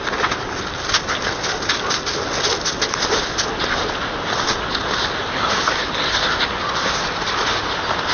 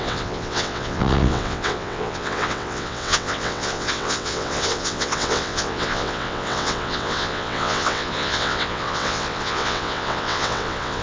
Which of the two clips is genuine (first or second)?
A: first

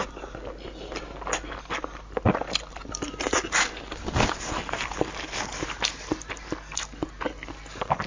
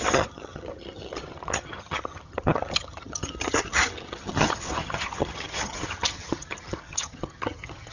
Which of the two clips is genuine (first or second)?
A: first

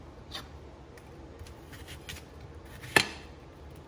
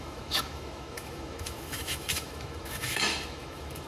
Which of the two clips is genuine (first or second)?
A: first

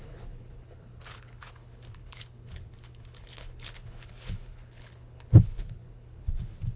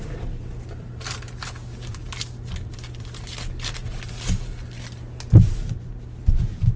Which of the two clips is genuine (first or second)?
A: second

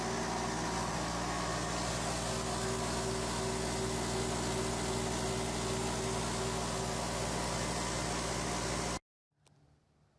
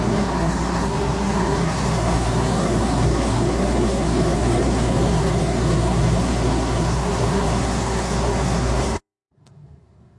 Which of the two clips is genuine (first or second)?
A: first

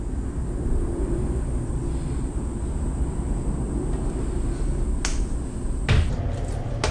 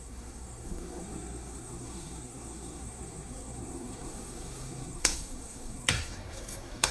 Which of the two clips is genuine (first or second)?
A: first